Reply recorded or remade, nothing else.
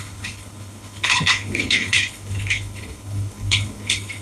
remade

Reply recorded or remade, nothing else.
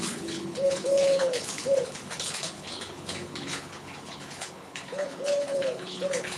remade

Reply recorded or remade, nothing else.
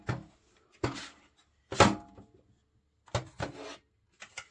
recorded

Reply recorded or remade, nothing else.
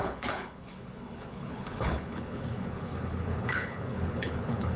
remade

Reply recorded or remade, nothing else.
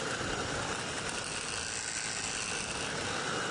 recorded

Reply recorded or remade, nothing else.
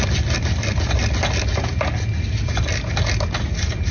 recorded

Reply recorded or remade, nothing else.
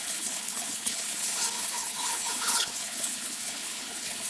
remade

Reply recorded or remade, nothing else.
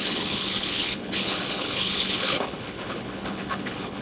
remade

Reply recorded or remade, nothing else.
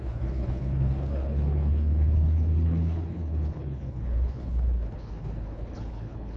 remade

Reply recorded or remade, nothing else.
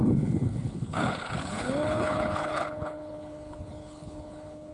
remade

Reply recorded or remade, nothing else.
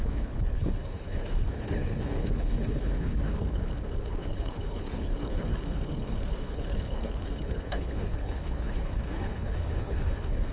remade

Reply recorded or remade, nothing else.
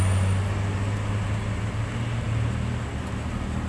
recorded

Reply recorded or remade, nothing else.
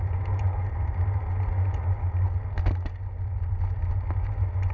recorded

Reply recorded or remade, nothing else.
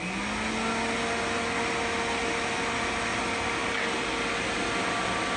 recorded